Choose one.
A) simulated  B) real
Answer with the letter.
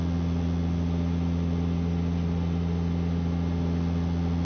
B